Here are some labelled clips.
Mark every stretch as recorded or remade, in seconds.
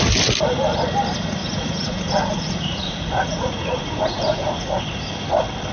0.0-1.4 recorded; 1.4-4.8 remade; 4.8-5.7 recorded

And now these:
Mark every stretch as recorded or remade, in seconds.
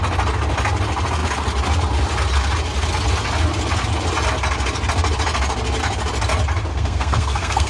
0.0-6.7 recorded; 6.7-7.7 remade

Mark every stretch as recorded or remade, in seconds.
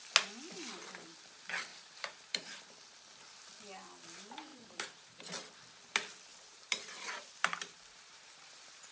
0.0-1.7 recorded; 1.7-2.6 remade; 2.6-4.5 recorded; 4.5-5.2 remade; 5.2-6.3 recorded; 6.3-8.9 remade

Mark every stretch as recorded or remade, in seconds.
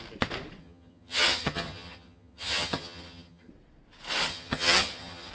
0.0-0.6 recorded; 0.6-3.5 remade; 3.5-4.3 recorded; 4.3-5.3 remade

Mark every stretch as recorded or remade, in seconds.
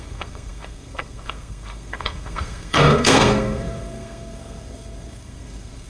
0.0-5.9 remade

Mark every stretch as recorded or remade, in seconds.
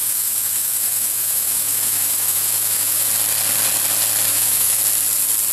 0.0-3.1 remade; 3.1-4.3 recorded; 4.3-4.8 remade; 4.8-5.5 recorded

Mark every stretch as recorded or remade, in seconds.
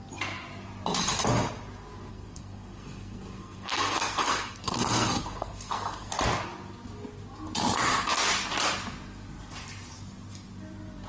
0.0-2.1 recorded; 2.1-6.1 remade; 6.1-11.1 recorded